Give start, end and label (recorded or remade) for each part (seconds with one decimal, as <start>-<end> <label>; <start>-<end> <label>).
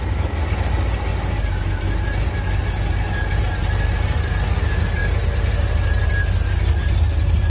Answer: 0.0-7.5 recorded